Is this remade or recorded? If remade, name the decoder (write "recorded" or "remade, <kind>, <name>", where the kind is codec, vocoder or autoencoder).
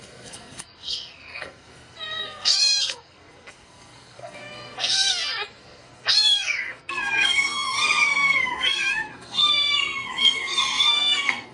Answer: remade, codec, SNAC